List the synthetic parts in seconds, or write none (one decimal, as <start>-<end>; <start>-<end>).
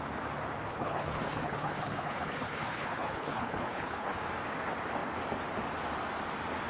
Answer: 0.7-4.2